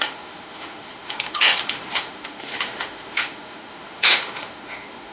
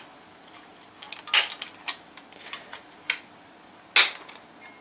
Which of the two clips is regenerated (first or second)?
first